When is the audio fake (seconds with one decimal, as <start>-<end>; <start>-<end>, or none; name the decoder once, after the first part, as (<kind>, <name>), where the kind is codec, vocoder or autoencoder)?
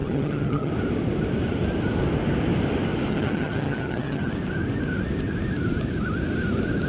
0.0-0.7 (vocoder, HiFi-GAN); 3.1-4.3